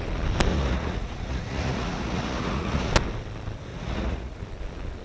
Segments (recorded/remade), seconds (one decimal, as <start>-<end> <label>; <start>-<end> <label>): 0.0-0.5 recorded; 0.5-2.9 remade; 2.9-3.7 recorded; 3.7-4.4 remade; 4.4-5.0 recorded